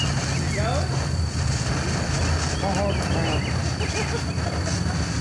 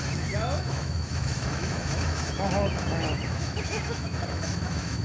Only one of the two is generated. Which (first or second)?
second